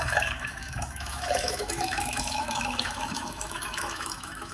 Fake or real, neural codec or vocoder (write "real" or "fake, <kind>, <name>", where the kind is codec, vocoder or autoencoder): fake, autoencoder, DAC-VAE